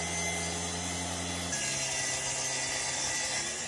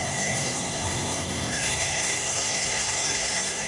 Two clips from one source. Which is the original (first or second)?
first